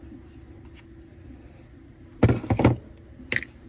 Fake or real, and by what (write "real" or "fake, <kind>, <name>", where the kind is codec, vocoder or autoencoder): real